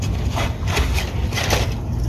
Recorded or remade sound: recorded